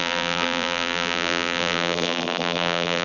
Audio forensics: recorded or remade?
remade